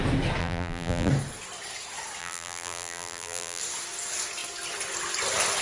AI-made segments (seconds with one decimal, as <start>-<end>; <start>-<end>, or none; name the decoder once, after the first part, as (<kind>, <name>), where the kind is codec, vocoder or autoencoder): 0.4-1.1 (vocoder, BigVGAN v2); 2.2-3.6